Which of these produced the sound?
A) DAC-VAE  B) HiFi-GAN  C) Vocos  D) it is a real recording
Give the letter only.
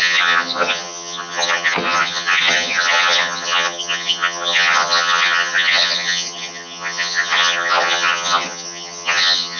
B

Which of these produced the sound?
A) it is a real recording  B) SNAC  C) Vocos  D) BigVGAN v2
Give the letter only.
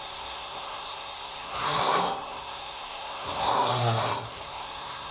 B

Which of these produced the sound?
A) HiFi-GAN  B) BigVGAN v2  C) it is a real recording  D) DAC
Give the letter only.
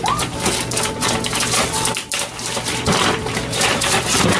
B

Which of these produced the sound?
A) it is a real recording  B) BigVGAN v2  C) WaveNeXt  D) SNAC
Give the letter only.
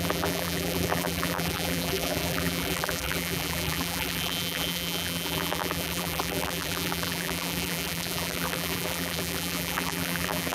B